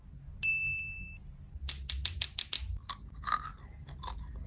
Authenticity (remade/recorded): recorded